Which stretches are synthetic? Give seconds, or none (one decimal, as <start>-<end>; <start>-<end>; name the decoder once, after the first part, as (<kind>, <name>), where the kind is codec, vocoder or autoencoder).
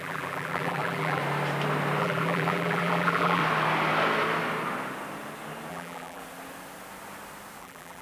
0.0-1.2 (vocoder, BigVGAN v2); 2.0-3.4; 5.7-6.2; 7.6-8.0